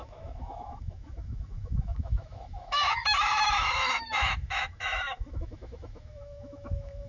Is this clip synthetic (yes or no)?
yes